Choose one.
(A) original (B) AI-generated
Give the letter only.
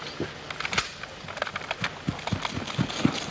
A